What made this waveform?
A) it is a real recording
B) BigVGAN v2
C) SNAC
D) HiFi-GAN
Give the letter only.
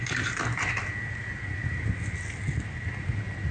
A